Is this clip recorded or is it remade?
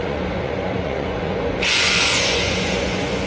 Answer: remade